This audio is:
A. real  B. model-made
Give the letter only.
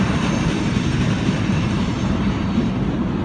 B